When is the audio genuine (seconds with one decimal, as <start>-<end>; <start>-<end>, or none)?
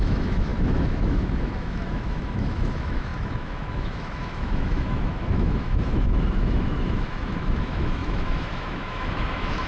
none